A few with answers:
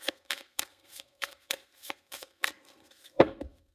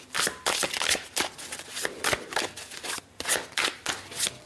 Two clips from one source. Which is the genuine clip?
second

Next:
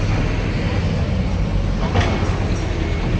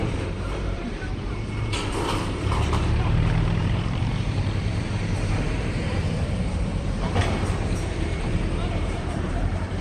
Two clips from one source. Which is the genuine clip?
first